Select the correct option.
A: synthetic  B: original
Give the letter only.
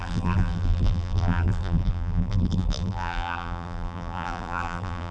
A